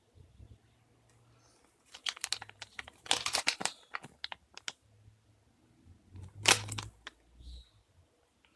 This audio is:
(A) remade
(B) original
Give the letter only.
B